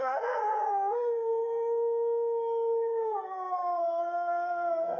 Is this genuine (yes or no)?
no